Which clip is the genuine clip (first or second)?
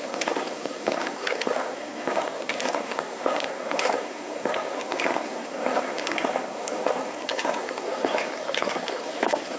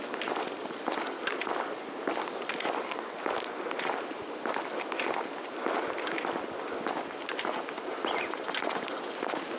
second